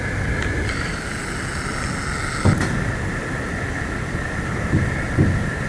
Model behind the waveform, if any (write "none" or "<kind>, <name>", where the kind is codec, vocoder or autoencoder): none